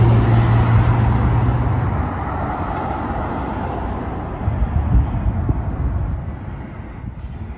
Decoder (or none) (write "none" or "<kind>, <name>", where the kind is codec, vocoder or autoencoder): none